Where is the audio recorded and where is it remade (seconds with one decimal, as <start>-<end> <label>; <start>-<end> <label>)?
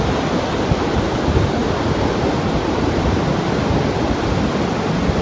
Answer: 0.0-5.2 recorded